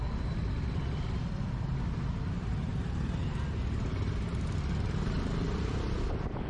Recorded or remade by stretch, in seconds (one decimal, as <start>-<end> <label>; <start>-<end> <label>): 0.0-6.5 recorded